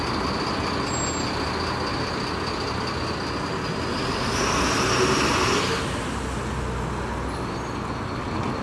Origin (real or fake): real